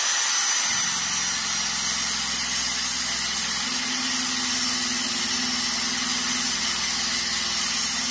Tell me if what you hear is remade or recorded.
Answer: recorded